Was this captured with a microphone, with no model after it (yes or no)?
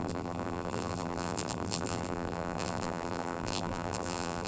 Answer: no